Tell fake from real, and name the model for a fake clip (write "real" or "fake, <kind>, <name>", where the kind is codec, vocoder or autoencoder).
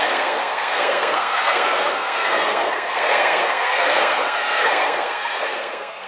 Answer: fake, codec, SNAC